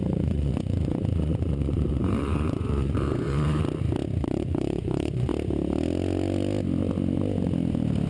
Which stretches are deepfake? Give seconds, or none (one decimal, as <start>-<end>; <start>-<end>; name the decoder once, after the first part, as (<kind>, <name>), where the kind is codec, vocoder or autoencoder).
0.0-3.6 (vocoder, Vocos); 4.2-5.3